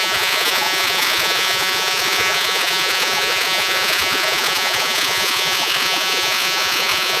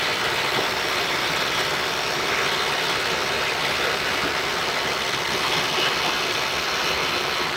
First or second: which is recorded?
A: second